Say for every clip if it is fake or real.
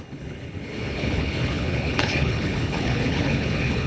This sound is fake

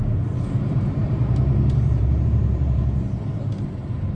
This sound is fake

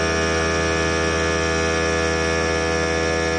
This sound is real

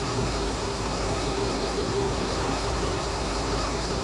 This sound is fake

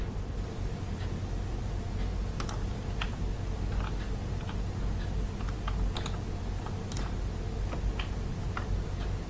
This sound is real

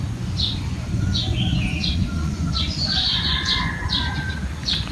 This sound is fake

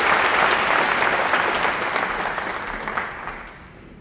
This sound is real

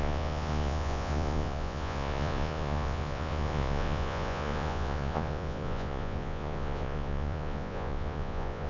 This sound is fake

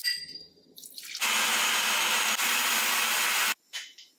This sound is real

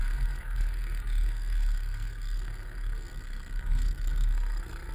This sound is fake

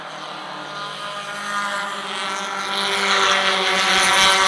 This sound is real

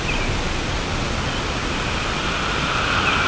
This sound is real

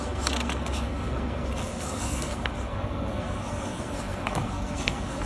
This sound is fake